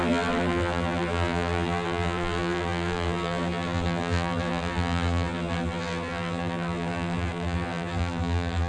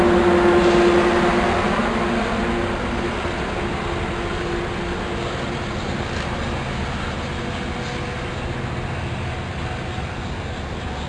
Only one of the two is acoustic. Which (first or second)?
second